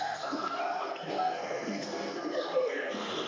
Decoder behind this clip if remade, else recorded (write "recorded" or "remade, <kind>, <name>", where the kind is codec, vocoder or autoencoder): remade, codec, SNAC